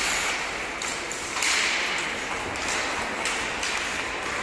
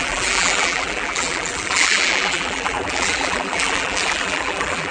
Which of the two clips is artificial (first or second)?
second